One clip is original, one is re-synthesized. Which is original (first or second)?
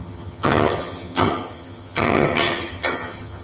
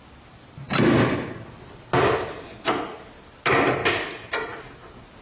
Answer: second